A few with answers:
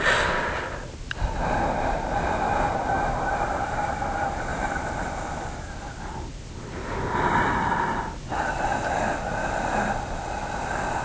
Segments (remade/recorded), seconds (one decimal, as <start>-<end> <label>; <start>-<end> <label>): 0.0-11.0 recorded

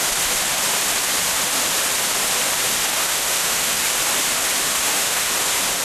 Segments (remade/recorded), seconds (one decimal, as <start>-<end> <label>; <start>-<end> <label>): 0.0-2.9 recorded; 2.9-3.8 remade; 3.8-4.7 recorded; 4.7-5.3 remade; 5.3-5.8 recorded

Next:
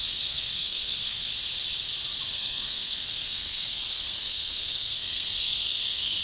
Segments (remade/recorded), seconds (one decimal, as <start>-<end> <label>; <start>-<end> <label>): 0.0-1.3 remade; 1.3-2.3 recorded; 2.3-6.2 remade